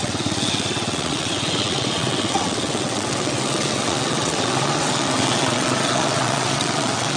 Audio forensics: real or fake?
fake